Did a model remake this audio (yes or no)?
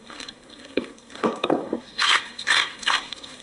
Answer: yes